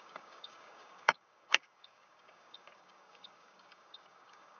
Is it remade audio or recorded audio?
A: remade